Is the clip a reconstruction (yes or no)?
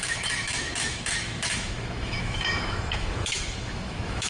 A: yes